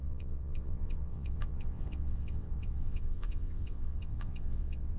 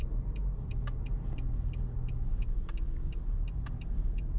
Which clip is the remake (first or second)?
first